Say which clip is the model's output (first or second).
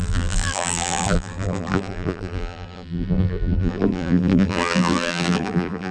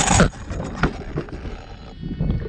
first